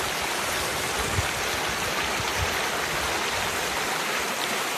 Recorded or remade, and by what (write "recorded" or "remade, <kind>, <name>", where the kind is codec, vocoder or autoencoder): recorded